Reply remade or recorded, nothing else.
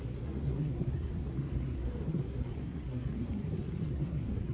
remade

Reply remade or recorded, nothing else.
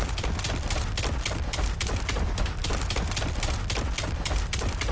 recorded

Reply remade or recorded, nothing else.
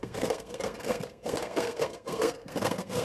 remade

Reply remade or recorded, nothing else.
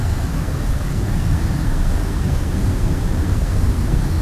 remade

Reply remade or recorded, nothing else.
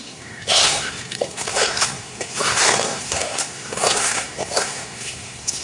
remade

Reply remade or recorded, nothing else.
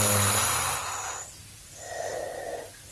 recorded